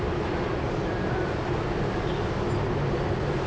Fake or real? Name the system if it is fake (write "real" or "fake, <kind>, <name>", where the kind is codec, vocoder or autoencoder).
real